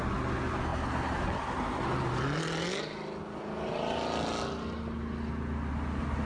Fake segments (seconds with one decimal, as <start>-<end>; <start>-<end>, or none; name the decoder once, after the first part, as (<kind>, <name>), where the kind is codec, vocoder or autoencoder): none